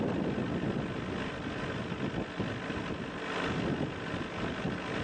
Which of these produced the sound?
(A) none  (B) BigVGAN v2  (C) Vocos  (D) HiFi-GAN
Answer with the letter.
A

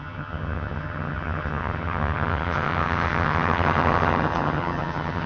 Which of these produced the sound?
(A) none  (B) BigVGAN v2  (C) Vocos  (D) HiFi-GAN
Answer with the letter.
D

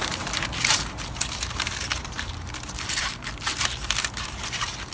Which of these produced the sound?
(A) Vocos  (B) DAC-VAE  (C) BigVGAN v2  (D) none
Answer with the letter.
C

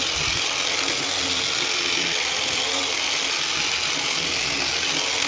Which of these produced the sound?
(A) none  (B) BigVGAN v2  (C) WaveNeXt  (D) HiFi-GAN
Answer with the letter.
A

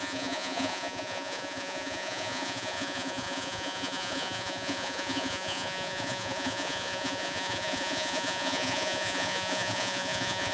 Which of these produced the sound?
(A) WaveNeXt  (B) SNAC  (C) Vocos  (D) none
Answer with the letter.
C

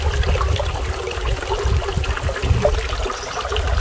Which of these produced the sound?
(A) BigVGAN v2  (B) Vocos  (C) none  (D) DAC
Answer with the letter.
C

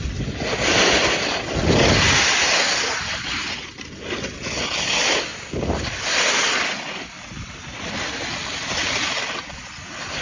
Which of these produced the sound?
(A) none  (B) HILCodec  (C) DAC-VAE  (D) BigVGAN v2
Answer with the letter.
A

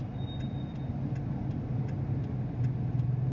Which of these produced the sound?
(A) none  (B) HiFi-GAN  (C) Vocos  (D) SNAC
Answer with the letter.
A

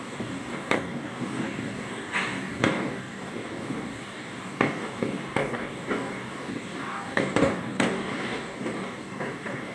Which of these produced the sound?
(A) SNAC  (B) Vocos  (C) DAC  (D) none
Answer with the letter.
C